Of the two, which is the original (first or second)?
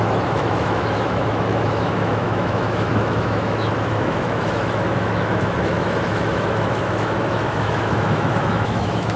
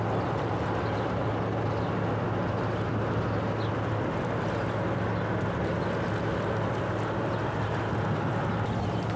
second